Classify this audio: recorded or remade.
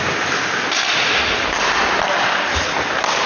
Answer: recorded